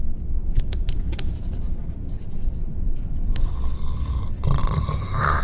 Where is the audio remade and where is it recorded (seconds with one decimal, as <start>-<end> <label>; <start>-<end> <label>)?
0.0-0.4 recorded; 0.4-3.5 remade; 3.5-4.6 recorded; 4.6-5.4 remade